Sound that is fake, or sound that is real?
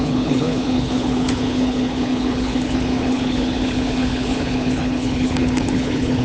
fake